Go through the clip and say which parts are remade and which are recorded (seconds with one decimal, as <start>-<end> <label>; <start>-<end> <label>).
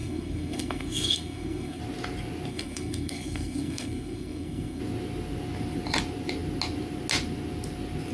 0.0-1.8 remade; 1.8-2.5 recorded; 2.5-4.8 remade; 4.8-8.1 recorded